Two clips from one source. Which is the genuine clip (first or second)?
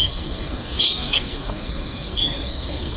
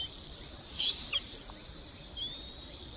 second